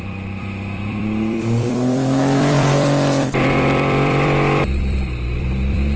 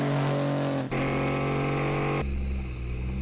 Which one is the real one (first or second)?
second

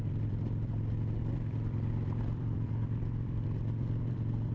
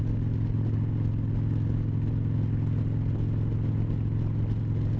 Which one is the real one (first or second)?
second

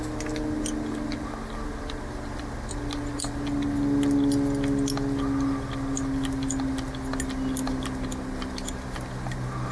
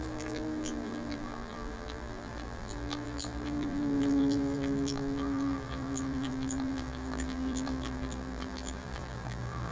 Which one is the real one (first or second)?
first